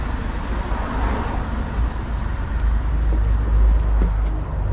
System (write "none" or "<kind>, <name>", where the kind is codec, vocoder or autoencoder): none